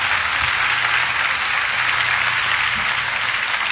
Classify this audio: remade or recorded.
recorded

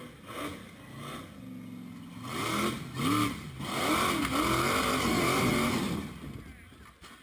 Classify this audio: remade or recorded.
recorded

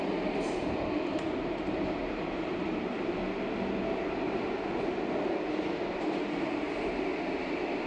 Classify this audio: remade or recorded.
recorded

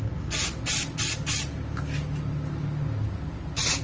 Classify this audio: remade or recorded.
recorded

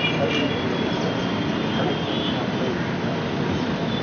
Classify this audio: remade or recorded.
recorded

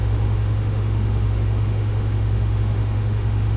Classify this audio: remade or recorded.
remade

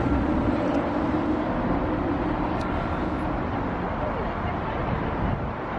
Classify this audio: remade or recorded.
recorded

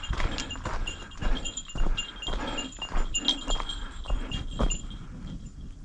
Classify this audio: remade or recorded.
recorded